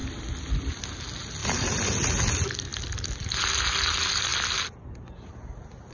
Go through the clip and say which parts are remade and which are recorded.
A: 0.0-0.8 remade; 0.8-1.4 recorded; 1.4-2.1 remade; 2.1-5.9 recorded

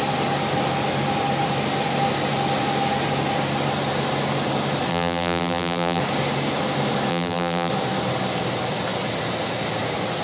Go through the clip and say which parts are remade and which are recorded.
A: 0.0-4.9 recorded; 4.9-6.0 remade; 6.0-7.1 recorded; 7.1-7.7 remade; 7.7-10.2 recorded

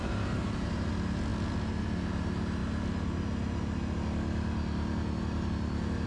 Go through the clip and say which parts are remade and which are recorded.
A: 0.0-0.9 remade; 0.9-6.1 recorded